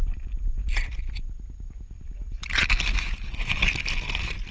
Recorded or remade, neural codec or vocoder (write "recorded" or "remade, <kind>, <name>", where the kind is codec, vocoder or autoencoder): recorded